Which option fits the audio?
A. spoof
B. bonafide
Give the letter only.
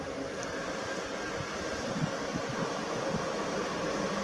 B